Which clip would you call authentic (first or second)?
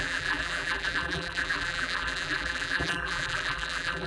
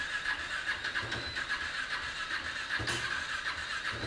second